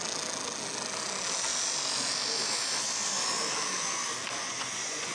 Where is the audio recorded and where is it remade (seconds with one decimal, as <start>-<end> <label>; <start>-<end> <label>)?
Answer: 0.0-4.4 recorded; 4.4-5.1 remade